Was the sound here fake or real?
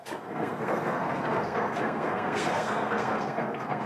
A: fake